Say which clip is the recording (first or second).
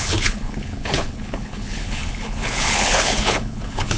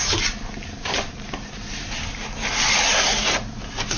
second